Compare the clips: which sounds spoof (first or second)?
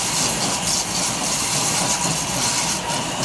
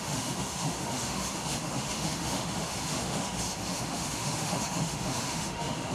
second